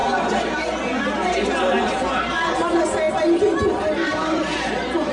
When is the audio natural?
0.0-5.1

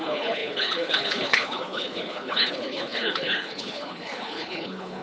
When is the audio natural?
none

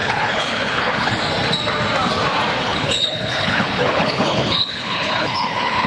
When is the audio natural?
1.2-2.6

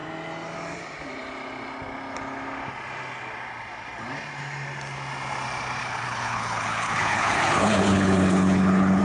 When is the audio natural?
0.0-5.8

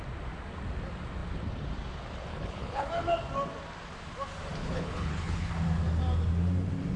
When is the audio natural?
0.0-2.3; 2.9-4.6; 5.5-7.0

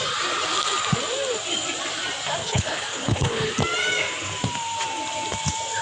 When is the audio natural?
0.0-2.4; 3.5-5.8

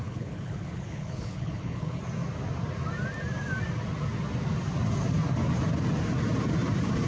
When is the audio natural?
2.0-7.1